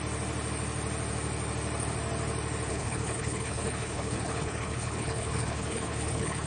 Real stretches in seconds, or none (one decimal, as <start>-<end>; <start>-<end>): 0.0-2.7